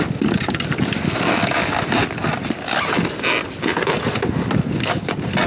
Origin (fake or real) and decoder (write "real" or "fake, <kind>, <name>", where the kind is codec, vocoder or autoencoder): real